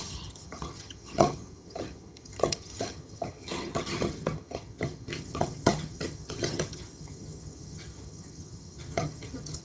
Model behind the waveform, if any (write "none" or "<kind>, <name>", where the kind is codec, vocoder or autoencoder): vocoder, HiFi-GAN